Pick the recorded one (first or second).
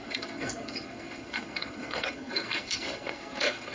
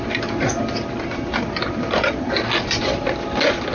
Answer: second